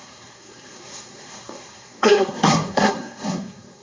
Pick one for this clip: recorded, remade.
remade